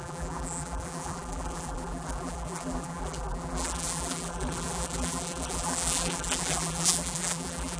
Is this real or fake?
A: fake